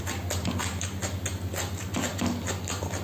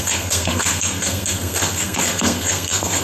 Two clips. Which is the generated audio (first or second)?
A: second